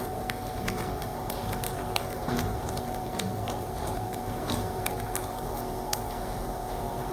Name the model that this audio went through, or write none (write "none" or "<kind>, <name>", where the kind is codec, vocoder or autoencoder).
codec, SNAC